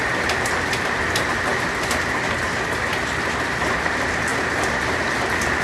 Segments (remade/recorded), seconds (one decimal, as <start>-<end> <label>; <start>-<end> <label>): 0.0-5.6 recorded